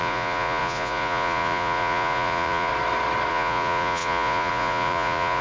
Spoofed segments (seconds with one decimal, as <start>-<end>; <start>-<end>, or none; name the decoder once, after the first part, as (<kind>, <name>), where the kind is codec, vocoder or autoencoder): 0.0-2.7 (vocoder, Vocos); 3.3-5.4